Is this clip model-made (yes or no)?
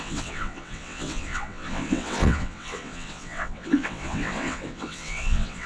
yes